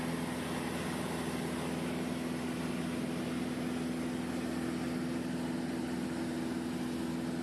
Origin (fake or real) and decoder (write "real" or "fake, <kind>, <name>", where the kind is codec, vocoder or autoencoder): real